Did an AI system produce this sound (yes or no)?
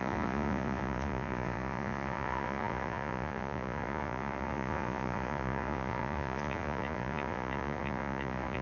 yes